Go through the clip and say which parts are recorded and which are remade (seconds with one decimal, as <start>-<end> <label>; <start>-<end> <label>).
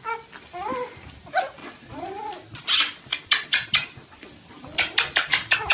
0.0-1.6 recorded; 1.6-2.1 remade; 2.1-5.7 recorded